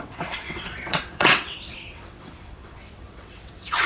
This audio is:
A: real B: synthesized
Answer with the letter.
B